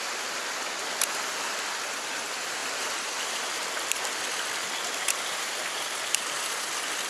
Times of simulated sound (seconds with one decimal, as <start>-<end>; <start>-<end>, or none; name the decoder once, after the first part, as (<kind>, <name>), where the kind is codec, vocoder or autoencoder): none